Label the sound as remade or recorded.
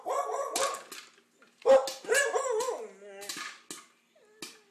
recorded